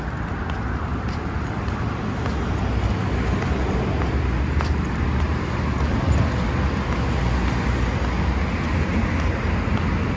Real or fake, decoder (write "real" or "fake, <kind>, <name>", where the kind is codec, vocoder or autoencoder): real